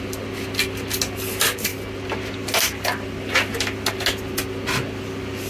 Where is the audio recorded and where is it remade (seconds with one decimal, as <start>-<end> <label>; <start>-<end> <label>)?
0.0-5.5 recorded